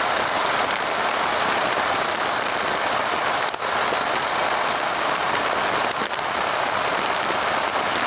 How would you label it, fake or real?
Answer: real